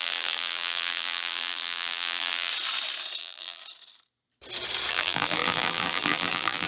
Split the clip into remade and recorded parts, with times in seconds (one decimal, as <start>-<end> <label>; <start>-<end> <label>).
0.0-2.5 remade; 2.5-3.2 recorded; 3.2-3.6 remade; 3.6-4.9 recorded; 4.9-6.7 remade